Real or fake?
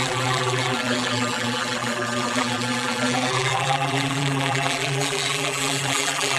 fake